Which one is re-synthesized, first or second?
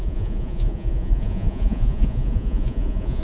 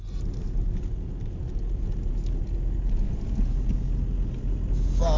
first